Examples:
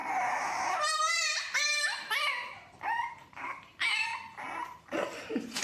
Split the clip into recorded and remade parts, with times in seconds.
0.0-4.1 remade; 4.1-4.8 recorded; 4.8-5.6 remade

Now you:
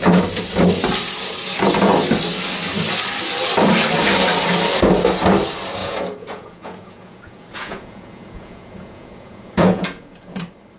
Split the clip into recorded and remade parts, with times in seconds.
0.0-5.8 recorded; 5.8-10.4 remade; 10.4-10.8 recorded

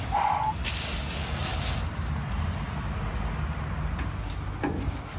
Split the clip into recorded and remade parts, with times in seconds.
0.0-5.2 recorded

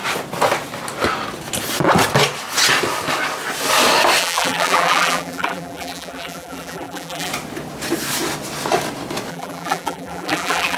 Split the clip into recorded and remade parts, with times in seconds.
0.0-4.2 recorded; 4.2-7.3 remade; 7.3-9.3 recorded; 9.3-10.8 remade

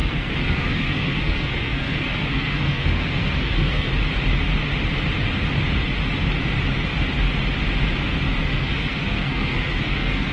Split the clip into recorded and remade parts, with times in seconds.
0.0-3.9 remade; 3.9-8.4 recorded; 8.4-10.3 remade

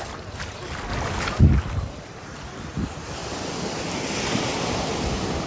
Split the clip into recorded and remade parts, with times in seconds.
0.0-5.5 recorded

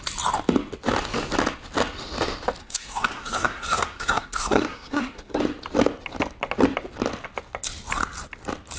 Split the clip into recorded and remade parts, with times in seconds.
0.0-2.6 recorded; 2.6-5.4 remade; 5.4-8.8 recorded

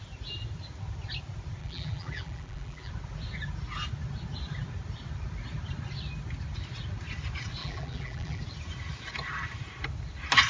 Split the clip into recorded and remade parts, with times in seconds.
0.0-1.6 recorded; 1.6-2.9 remade; 2.9-7.6 recorded; 7.6-8.4 remade; 8.4-10.5 recorded